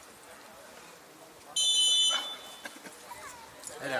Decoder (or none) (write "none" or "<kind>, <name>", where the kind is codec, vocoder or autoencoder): none